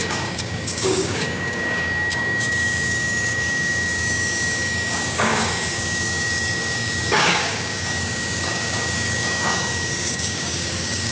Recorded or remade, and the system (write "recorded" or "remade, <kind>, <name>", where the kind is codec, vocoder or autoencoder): remade, codec, DAC